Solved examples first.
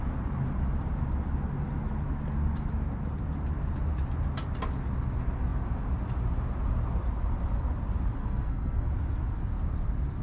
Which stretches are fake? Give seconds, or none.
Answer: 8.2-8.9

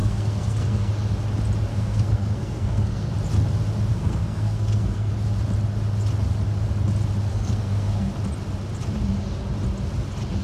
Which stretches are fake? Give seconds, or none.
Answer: 0.0-0.9; 1.7-3.1; 3.9-5.1; 7.3-8.1

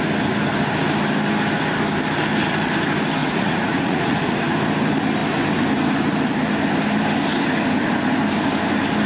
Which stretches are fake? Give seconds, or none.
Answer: 3.2-4.4

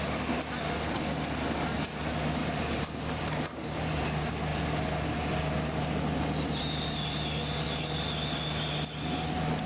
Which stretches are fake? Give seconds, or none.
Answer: 2.4-4.0

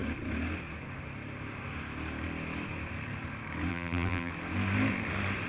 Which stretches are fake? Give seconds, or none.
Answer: 3.7-4.3

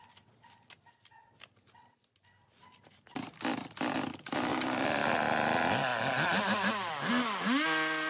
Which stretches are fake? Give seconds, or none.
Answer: 4.5-5.1

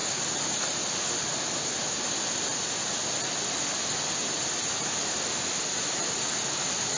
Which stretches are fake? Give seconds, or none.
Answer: none